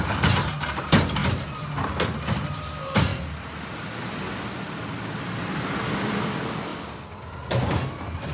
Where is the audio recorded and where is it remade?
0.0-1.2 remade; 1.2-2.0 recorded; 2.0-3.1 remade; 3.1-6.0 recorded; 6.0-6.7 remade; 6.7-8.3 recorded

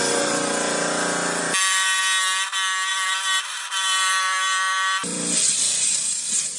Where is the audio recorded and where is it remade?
0.0-1.4 recorded; 1.4-2.0 remade; 2.0-2.9 recorded; 2.9-5.4 remade; 5.4-6.6 recorded

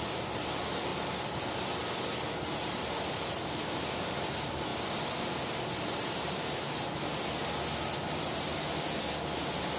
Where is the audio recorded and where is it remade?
0.0-9.8 recorded

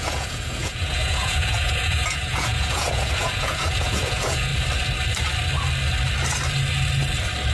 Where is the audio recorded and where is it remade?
0.0-4.5 remade; 4.5-7.5 recorded